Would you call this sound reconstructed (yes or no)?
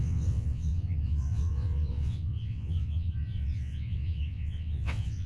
yes